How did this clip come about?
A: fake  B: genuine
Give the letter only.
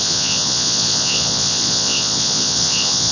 A